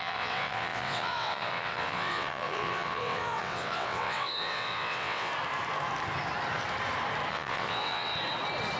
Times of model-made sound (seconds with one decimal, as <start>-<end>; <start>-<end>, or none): 0.0-5.3; 7.3-8.1